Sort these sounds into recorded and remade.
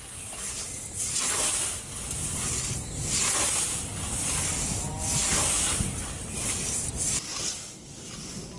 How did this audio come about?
recorded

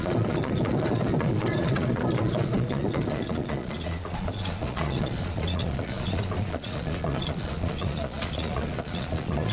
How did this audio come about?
remade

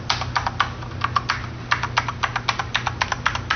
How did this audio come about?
recorded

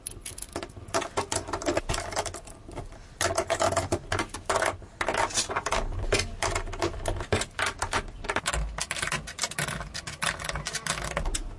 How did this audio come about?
recorded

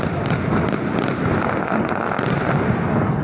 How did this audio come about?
recorded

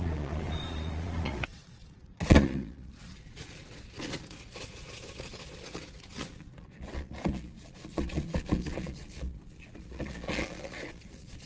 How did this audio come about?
remade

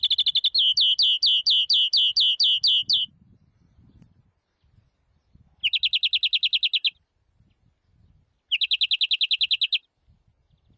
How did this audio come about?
recorded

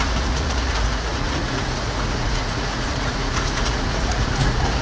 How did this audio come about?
remade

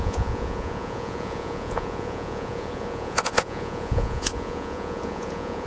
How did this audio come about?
remade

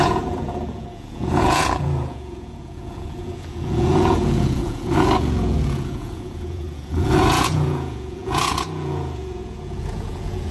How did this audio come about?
remade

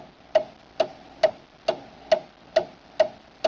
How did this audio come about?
recorded